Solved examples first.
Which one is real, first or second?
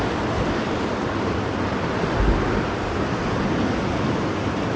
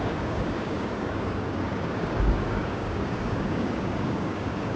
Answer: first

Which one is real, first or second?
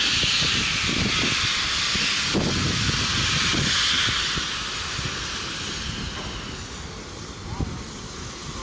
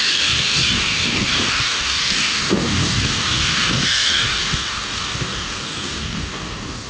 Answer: first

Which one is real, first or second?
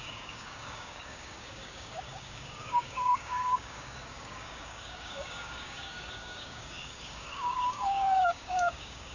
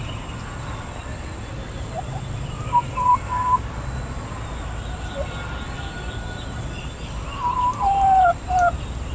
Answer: second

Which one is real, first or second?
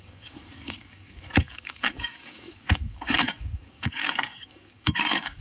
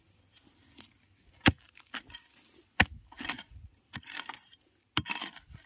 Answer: second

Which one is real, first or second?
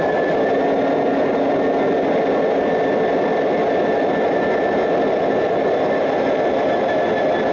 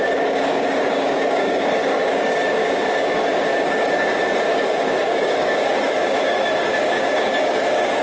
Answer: first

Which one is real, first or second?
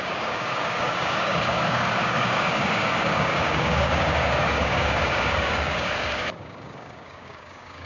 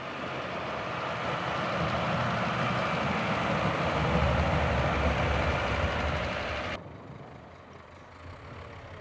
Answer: second